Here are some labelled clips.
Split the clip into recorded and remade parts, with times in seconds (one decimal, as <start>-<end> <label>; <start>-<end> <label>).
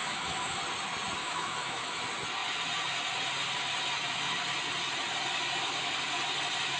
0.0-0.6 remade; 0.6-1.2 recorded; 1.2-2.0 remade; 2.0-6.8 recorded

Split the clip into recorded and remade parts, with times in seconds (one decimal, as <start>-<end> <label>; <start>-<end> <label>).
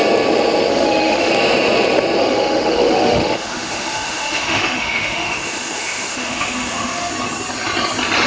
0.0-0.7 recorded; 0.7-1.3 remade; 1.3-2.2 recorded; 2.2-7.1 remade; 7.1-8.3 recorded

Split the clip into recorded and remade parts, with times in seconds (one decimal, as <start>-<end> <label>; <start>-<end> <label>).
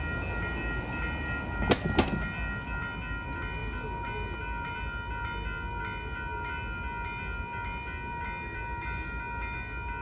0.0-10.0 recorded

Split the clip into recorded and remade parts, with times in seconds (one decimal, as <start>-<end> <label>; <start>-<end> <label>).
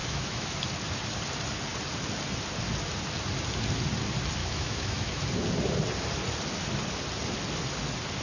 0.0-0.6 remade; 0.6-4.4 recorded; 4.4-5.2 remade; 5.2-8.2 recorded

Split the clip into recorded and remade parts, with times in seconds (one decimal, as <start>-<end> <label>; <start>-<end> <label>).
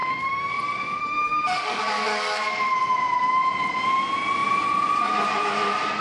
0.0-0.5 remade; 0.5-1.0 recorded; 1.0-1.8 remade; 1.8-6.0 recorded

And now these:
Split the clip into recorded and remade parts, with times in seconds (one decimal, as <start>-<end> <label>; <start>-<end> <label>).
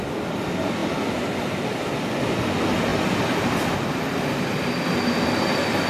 0.0-5.9 recorded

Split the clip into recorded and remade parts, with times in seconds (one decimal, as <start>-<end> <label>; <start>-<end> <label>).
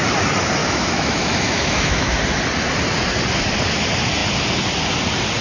0.0-0.6 recorded; 0.6-2.2 remade; 2.2-5.4 recorded